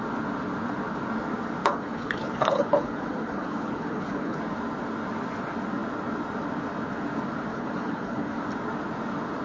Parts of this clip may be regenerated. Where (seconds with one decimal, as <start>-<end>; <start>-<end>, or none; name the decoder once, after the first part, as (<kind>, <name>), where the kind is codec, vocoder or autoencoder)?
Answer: 1.6-4.4 (codec, HILCodec); 7.5-8.4